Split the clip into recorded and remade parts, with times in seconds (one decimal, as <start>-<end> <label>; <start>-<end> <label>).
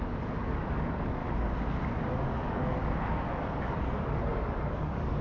0.0-1.2 remade; 1.2-2.2 recorded; 2.2-2.8 remade; 2.8-3.4 recorded; 3.4-5.2 remade